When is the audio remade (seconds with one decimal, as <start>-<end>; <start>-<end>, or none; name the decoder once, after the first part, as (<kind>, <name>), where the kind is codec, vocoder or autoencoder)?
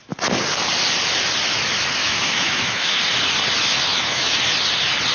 2.0-3.0 (autoencoder, DAC-VAE); 3.9-4.4